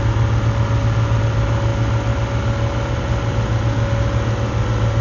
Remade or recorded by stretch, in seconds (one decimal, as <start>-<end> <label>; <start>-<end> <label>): 0.0-5.0 recorded